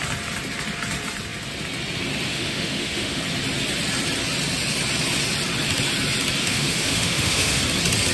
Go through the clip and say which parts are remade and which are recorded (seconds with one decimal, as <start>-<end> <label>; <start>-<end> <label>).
0.0-2.3 recorded; 2.3-3.2 remade; 3.2-6.4 recorded; 6.4-7.6 remade; 7.6-8.1 recorded